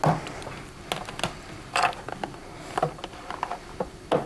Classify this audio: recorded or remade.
recorded